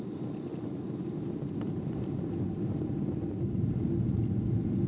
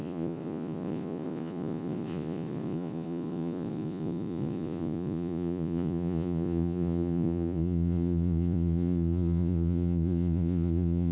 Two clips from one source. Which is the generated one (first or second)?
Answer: second